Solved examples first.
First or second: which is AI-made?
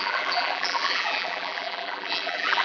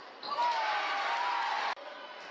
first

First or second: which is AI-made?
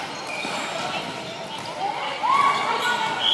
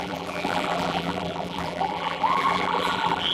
second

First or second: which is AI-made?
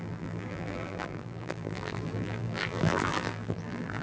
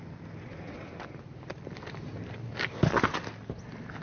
first